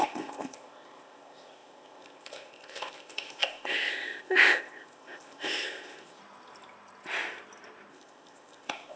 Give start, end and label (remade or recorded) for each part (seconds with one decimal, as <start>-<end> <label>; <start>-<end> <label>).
0.0-6.2 remade; 6.2-7.9 recorded; 7.9-9.0 remade